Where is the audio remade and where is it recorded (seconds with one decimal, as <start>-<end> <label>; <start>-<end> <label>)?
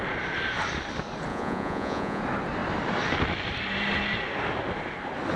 0.0-1.3 recorded; 1.3-2.2 remade; 2.2-5.4 recorded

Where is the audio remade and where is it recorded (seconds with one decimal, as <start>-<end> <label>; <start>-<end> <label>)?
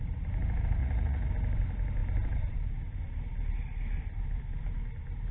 0.0-0.8 recorded; 0.8-1.3 remade; 1.3-5.3 recorded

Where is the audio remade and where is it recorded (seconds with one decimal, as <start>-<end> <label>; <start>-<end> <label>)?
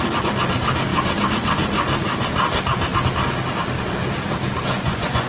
0.0-4.7 recorded; 4.7-5.3 remade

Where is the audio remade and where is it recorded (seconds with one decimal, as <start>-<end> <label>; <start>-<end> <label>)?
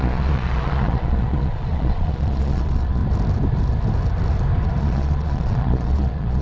0.0-3.0 remade; 3.0-4.8 recorded; 4.8-6.4 remade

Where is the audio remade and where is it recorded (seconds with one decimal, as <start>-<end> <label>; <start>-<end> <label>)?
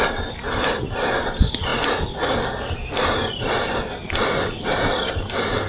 0.0-5.7 recorded